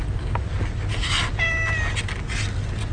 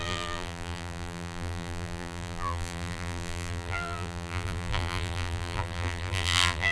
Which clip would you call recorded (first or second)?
first